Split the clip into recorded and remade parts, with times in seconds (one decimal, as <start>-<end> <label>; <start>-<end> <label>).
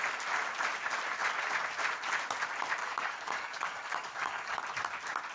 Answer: 0.0-2.8 recorded; 2.8-4.6 remade; 4.6-5.3 recorded